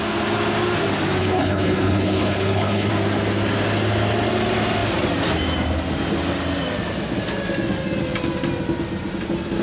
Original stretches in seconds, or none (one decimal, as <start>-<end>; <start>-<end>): 0.0-1.2; 2.9-9.6